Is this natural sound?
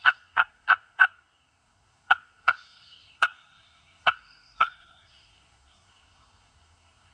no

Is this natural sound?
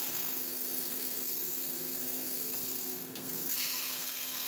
no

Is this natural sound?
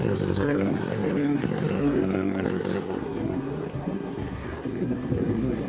no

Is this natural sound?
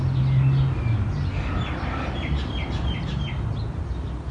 yes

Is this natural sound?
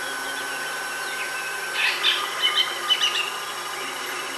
yes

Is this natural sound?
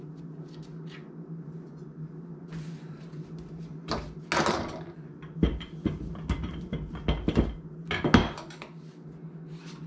yes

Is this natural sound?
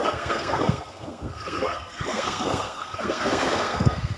no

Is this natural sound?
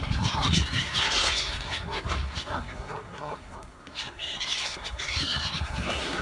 no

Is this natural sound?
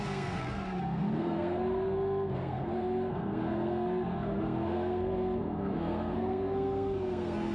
no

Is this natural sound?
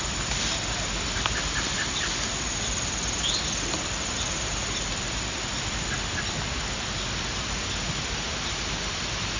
yes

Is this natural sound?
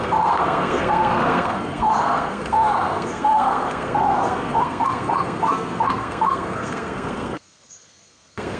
no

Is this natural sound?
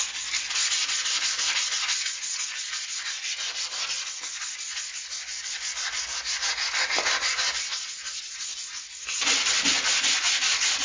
yes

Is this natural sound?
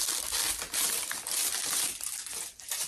yes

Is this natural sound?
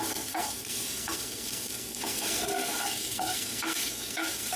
no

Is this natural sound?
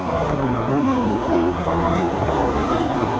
no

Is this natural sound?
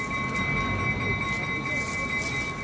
yes